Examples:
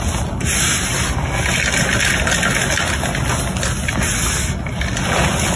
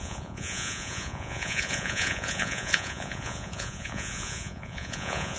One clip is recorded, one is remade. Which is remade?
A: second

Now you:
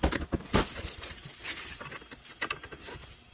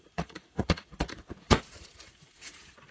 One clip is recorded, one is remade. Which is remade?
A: second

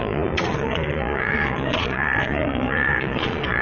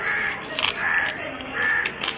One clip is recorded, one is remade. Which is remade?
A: first